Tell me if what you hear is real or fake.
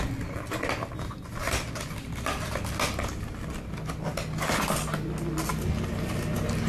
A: real